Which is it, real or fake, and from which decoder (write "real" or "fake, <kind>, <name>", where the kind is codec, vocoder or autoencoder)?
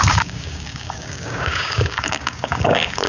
fake, codec, DAC